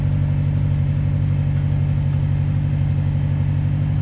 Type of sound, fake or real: real